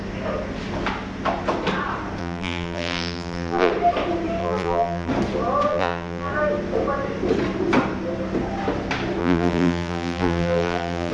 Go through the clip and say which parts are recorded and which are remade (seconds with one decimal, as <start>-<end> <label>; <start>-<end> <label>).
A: 0.0-2.2 recorded; 2.2-3.7 remade; 3.7-4.4 recorded; 4.4-5.1 remade; 5.1-5.7 recorded; 5.7-6.3 remade; 6.3-9.2 recorded; 9.2-11.1 remade